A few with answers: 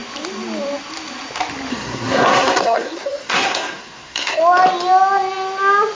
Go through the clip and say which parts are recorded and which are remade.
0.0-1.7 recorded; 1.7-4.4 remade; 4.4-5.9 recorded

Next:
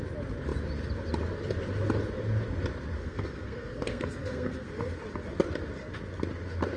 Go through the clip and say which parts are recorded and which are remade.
0.0-3.0 recorded; 3.0-4.7 remade; 4.7-6.8 recorded

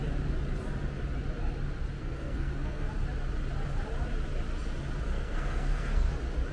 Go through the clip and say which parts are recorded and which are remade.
0.0-2.0 recorded; 2.0-2.9 remade; 2.9-5.1 recorded; 5.1-6.1 remade; 6.1-6.5 recorded